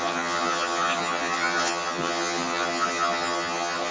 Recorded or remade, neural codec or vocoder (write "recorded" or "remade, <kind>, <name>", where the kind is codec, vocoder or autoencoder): remade, vocoder, HiFi-GAN